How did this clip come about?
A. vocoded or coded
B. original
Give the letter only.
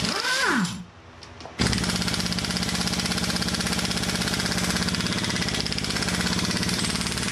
B